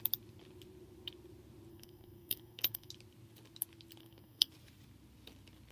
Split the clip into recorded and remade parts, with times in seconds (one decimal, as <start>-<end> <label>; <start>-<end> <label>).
0.0-1.7 recorded; 1.7-2.9 remade; 2.9-4.0 recorded; 4.0-4.5 remade; 4.5-5.7 recorded